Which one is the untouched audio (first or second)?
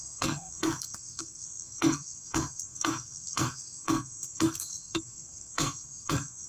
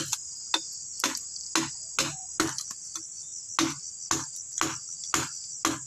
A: second